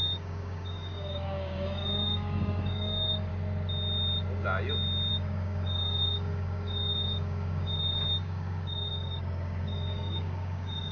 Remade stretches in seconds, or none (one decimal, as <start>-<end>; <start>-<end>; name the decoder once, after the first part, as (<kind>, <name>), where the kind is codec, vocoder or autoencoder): 0.0-3.3 (codec, DAC); 5.1-10.9